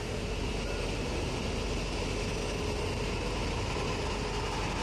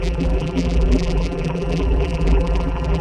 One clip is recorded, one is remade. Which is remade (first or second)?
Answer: second